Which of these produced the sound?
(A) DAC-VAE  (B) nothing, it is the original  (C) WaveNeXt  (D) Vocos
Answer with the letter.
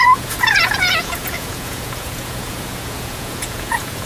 D